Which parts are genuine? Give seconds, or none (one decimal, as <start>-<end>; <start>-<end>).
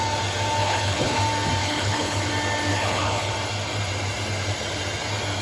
0.0-0.6; 1.2-1.6; 2.3-2.7; 3.3-5.4